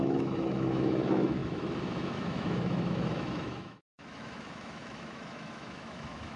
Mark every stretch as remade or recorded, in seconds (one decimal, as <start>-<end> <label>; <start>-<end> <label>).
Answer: 0.0-6.4 remade